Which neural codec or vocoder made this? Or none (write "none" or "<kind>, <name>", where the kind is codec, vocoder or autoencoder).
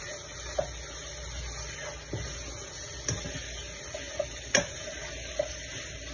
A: none